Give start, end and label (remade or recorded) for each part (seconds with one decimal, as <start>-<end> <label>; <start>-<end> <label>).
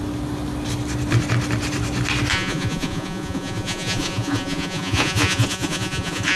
0.0-2.3 recorded; 2.3-6.4 remade